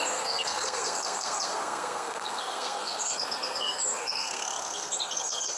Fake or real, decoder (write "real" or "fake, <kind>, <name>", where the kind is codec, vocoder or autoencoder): fake, codec, SNAC